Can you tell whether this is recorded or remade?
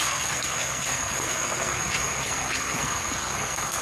remade